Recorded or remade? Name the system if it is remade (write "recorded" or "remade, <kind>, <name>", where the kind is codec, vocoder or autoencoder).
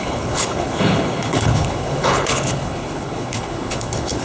remade, codec, HILCodec